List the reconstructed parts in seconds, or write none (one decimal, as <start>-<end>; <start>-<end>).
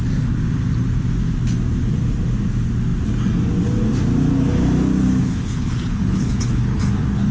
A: 5.2-6.8